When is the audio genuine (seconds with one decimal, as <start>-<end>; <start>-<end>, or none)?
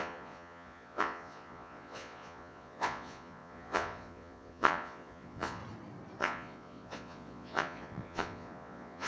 5.6-6.2